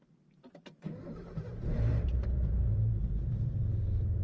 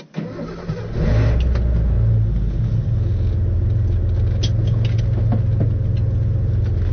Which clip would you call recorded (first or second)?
second